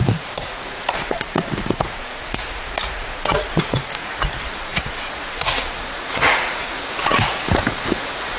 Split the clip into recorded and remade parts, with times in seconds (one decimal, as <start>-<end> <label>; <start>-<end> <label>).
0.0-8.4 remade